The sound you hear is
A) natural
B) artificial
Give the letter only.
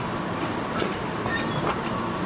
B